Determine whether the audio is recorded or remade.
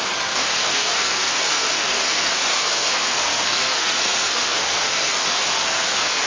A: remade